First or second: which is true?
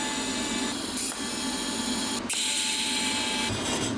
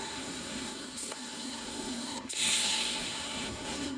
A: first